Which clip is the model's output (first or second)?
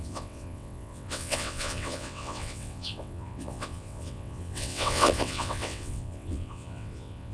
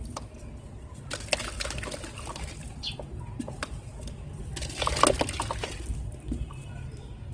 first